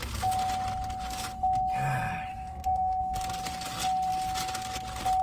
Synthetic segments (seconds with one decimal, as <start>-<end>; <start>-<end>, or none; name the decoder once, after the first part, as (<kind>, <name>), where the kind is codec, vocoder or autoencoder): 2.3-3.0 (codec, SNAC)